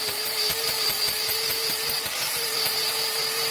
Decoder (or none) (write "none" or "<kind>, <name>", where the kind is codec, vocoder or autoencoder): vocoder, BigVGAN v2